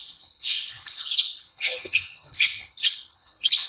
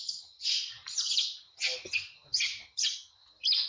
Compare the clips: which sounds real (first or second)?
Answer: second